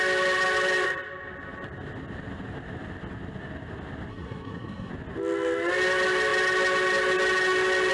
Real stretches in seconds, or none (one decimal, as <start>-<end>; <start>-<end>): 0.0-4.1; 4.9-7.9